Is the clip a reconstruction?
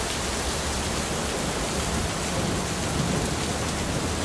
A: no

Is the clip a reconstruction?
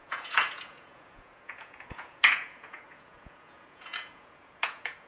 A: yes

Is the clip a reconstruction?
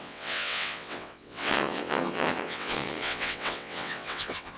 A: yes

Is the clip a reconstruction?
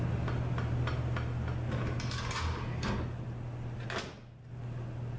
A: no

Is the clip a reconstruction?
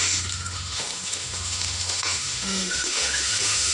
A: yes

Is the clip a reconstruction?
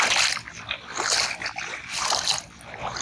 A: no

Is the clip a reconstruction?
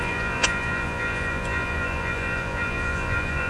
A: yes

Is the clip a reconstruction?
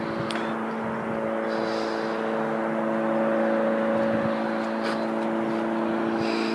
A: no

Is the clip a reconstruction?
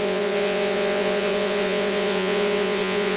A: yes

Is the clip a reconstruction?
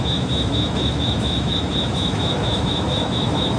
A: yes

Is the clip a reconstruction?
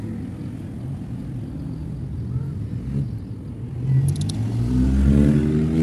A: no